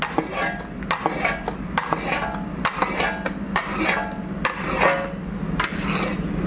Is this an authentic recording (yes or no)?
yes